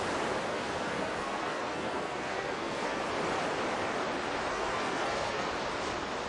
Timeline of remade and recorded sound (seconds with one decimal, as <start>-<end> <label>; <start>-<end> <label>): 0.0-0.5 recorded; 0.5-3.0 remade; 3.0-4.5 recorded; 4.5-5.5 remade; 5.5-6.3 recorded